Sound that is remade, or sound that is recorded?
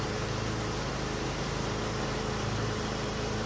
remade